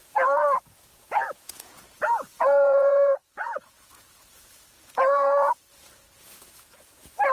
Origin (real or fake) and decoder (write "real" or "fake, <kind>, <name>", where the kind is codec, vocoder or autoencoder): fake, vocoder, Vocos